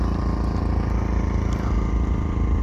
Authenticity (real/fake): real